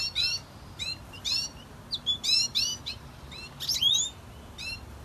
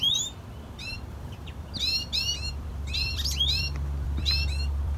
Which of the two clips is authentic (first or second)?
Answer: first